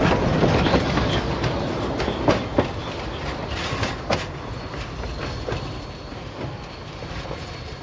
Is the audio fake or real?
real